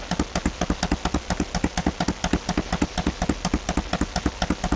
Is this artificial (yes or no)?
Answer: no